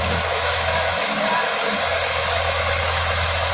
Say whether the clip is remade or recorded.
remade